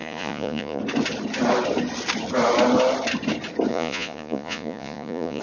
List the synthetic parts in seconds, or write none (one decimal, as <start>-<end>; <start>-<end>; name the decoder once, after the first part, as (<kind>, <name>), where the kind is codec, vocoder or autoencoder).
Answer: 0.0-0.8 (vocoder, Vocos); 3.7-5.4